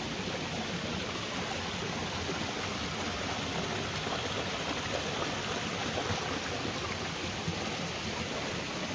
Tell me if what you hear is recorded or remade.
recorded